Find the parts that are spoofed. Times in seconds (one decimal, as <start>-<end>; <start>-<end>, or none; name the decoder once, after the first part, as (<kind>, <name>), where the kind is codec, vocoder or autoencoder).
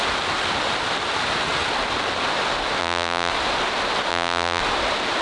2.8-3.3 (vocoder, BigVGAN v2); 4.1-4.6